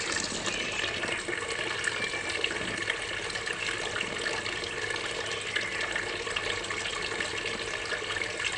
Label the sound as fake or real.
real